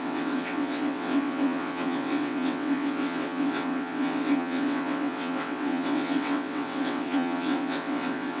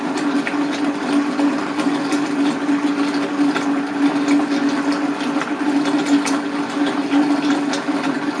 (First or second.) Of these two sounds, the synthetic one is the first